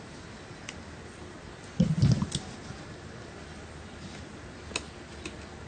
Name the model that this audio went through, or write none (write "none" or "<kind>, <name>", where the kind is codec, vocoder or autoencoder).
none